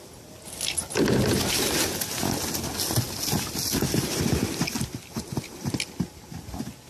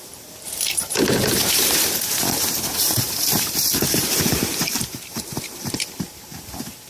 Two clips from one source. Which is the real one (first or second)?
first